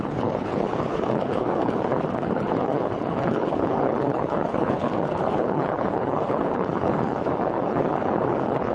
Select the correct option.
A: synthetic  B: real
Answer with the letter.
A